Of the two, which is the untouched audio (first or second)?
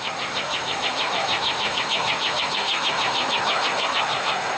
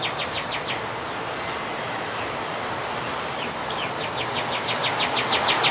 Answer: second